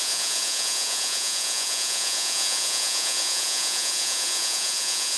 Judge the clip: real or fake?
fake